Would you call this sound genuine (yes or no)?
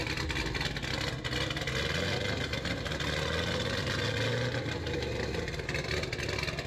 yes